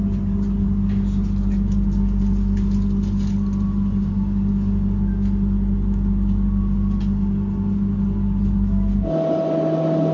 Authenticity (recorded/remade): recorded